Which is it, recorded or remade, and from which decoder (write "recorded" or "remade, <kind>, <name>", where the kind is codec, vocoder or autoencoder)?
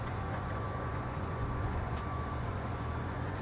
remade, vocoder, Vocos